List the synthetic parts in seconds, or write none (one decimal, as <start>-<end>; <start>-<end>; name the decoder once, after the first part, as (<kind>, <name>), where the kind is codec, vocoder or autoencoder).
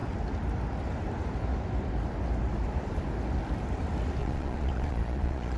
4.2-5.6 (vocoder, Vocos)